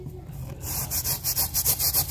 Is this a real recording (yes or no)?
yes